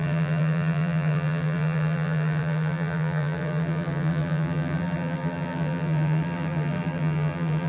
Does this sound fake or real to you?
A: fake